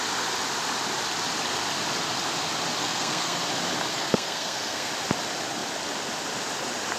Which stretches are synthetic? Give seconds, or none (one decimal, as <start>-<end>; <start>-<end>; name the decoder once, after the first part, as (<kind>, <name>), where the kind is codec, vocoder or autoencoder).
2.8-3.4 (codec, SNAC); 3.9-4.9